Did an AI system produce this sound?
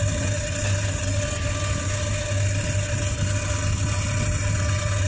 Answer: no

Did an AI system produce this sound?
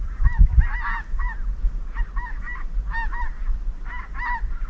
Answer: no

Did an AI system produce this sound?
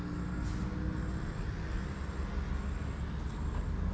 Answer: no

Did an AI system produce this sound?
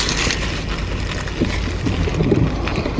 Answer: no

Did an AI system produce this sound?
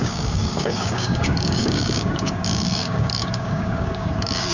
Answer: yes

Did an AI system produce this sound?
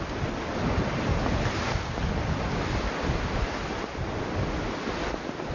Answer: no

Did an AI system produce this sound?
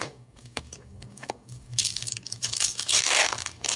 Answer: yes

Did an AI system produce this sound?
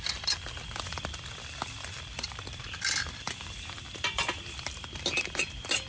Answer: no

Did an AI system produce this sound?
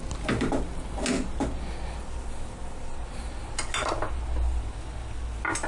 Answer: no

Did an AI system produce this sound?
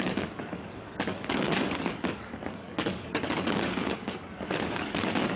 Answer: yes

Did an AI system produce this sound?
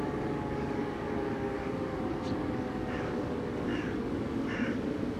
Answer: yes